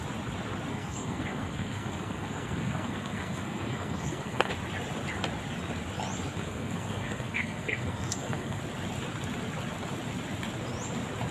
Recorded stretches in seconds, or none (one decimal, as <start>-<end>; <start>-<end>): 0.0-0.7; 4.5-6.3; 8.6-11.3